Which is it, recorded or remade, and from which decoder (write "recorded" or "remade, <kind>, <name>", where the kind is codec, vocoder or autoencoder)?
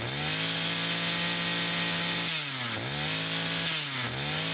recorded